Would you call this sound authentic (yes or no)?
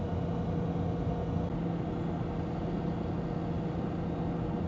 yes